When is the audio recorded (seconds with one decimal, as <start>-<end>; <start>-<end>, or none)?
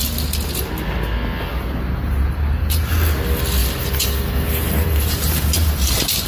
0.0-1.5; 2.9-3.6